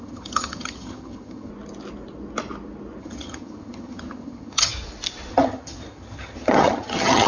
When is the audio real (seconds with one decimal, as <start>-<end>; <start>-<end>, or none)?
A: 1.5-3.0; 4.7-5.3